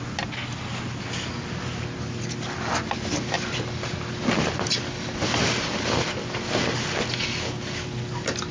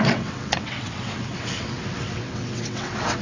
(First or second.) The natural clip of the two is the first